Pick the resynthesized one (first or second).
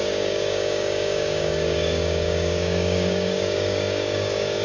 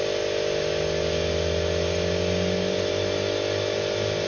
first